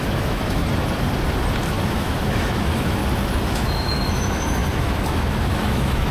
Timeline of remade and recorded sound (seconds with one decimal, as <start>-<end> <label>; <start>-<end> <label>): 0.0-0.6 remade; 0.6-1.9 recorded; 1.9-3.0 remade; 3.0-3.5 recorded; 3.5-6.1 remade